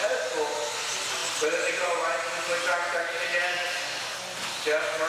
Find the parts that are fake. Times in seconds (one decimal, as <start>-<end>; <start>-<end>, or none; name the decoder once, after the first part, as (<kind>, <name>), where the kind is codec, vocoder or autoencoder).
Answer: 3.3-4.1 (vocoder, BigVGAN v2)